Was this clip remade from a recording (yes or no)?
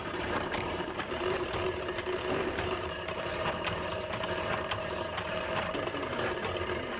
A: yes